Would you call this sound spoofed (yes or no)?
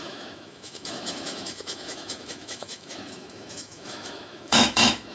yes